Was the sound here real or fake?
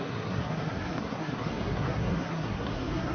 fake